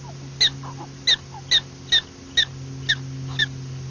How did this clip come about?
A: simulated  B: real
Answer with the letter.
B